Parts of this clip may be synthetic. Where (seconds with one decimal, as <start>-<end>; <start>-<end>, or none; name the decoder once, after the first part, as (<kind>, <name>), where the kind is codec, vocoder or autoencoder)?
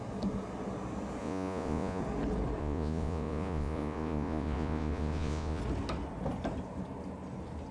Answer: 1.2-2.0 (vocoder, Vocos); 2.6-5.6